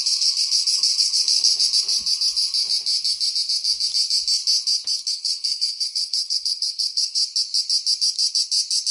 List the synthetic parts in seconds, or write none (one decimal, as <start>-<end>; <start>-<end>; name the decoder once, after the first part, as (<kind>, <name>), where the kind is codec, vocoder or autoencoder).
0.0-1.5 (codec, SNAC); 5.1-7.2